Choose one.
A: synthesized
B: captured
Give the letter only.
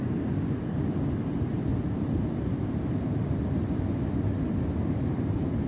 B